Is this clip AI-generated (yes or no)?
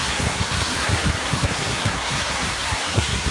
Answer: yes